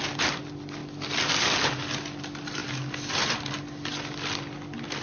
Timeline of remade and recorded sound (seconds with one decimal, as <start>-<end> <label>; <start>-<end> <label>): 0.0-5.0 recorded